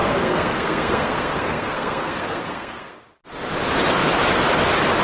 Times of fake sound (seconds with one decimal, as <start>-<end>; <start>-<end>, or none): 0.0-3.0

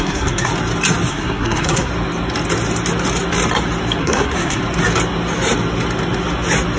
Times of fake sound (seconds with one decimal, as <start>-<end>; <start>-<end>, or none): 0.0-0.5; 1.1-1.9; 4.0-4.6

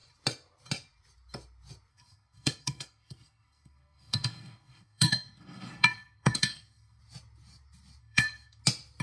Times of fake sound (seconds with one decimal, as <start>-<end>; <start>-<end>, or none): 1.9-7.0; 8.0-8.6

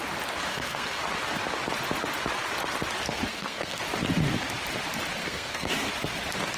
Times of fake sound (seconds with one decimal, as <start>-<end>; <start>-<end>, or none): 0.5-1.0; 3.3-3.8; 5.2-5.7

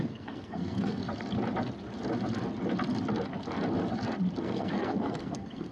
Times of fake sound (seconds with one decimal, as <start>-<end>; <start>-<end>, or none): 0.0-1.0; 4.4-5.7

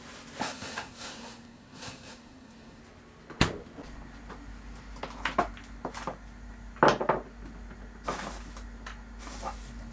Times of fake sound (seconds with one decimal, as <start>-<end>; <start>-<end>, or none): 0.4-2.8

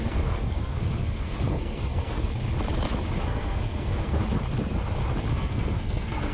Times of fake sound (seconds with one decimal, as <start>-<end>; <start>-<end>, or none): 0.0-2.3; 3.2-4.2; 5.3-6.3

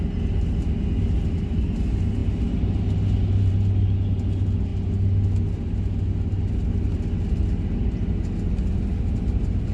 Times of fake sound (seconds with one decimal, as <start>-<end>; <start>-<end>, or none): none